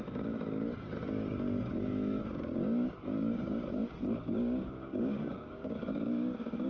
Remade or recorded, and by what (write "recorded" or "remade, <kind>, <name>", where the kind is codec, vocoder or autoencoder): remade, codec, DAC